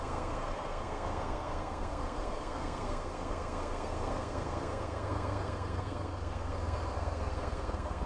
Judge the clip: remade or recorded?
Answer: remade